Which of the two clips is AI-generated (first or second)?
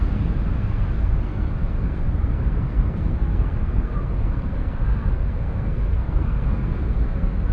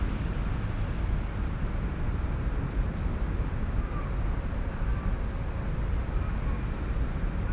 first